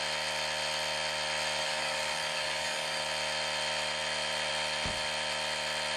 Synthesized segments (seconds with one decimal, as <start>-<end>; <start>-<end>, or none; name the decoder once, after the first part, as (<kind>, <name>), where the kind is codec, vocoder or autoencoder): 1.6-3.0 (codec, DAC)